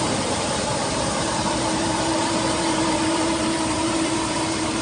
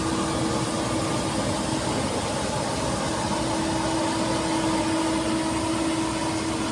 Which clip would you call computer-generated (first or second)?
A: first